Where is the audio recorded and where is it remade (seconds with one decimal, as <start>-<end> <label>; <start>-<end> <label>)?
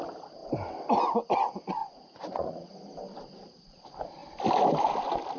0.0-1.8 recorded; 1.8-2.7 remade; 2.7-5.4 recorded